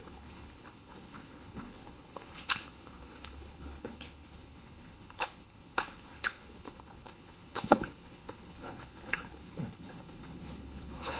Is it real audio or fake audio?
fake